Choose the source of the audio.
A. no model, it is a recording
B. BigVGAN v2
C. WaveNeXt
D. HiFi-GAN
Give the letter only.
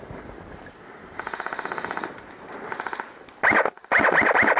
A